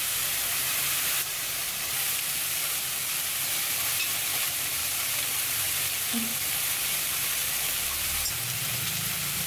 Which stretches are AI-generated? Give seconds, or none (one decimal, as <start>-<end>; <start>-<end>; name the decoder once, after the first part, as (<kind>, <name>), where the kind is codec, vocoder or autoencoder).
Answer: 0.0-6.3 (vocoder, BigVGAN v2); 6.8-9.5